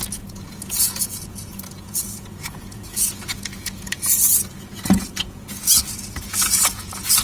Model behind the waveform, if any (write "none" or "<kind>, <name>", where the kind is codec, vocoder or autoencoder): vocoder, Vocos